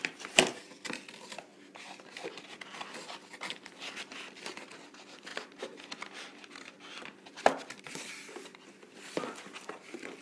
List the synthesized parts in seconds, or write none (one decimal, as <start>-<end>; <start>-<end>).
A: 0.0-1.5; 2.4-5.3; 7.8-10.2